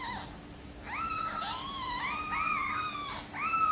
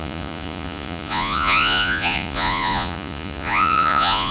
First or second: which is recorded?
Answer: first